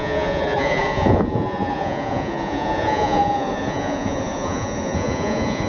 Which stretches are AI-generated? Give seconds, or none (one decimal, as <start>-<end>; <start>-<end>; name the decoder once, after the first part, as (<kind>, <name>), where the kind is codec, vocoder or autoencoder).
0.0-5.7 (vocoder, Vocos)